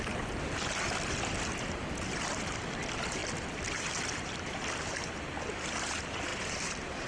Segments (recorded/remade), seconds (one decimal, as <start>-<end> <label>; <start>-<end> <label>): 0.0-7.1 recorded